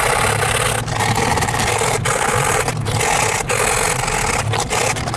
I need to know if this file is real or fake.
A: real